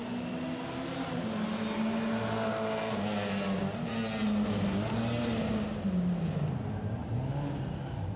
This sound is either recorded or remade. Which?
recorded